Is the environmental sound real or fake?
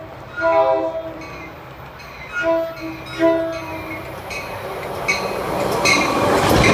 real